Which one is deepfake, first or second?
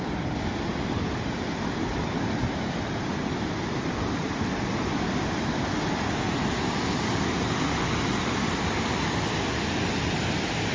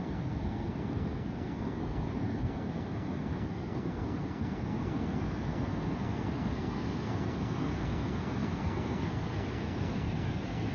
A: second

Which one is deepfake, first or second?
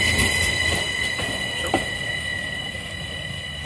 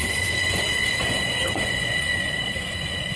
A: second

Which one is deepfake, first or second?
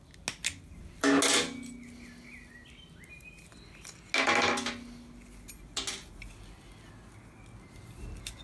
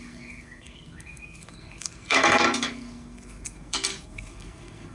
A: second